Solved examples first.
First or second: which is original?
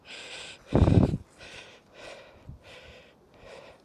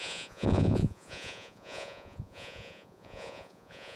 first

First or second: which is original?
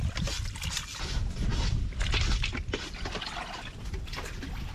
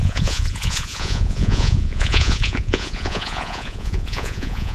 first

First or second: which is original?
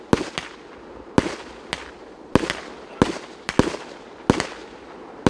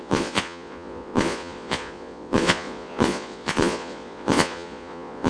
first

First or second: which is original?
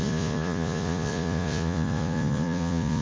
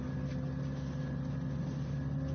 second